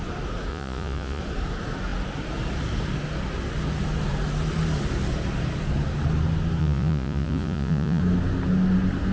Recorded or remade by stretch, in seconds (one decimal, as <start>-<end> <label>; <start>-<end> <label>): 0.0-0.5 recorded; 0.5-1.2 remade; 1.2-6.6 recorded; 6.6-8.0 remade; 8.0-9.1 recorded